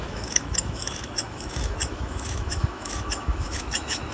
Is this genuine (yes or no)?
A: no